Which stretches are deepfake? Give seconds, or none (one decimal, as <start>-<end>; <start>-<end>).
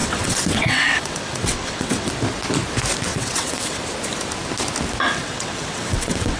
0.0-2.1; 3.1-3.8; 5.2-6.4